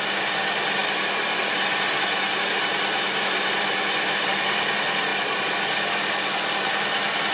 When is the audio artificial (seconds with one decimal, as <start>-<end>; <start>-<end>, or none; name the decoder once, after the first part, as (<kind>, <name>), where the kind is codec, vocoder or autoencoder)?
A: none